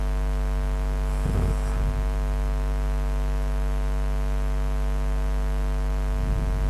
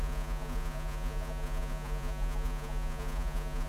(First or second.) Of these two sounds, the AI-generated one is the second